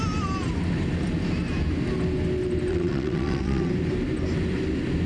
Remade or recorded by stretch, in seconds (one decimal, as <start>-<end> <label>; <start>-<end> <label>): 0.0-2.7 recorded; 2.7-3.7 remade; 3.7-5.1 recorded